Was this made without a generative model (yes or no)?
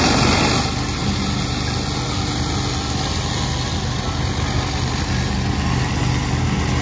yes